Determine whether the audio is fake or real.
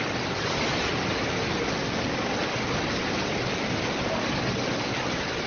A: real